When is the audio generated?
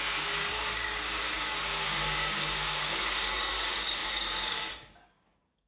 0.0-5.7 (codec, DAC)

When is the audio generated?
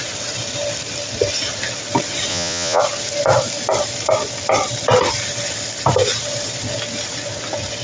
2.3-2.8 (vocoder, Vocos)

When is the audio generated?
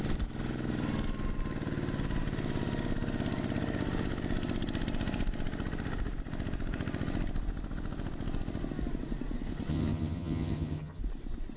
9.7-11.0 (vocoder, HiFi-GAN)